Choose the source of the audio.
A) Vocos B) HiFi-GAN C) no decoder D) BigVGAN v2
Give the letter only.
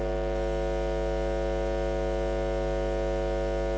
C